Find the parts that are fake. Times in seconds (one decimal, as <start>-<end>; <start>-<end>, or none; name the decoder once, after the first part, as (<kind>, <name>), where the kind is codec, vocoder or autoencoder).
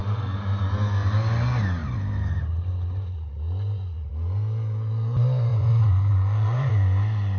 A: 5.5-6.7 (vocoder, Vocos)